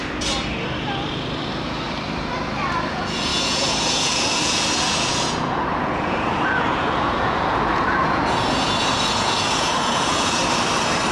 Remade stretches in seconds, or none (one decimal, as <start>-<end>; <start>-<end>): 2.9-10.4